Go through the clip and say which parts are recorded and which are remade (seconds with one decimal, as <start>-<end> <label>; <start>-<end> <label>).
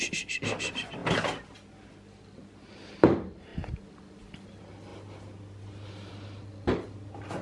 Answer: 0.0-1.0 remade; 1.0-3.0 recorded; 3.0-3.5 remade; 3.5-4.2 recorded; 4.2-4.9 remade; 4.9-6.1 recorded; 6.1-7.4 remade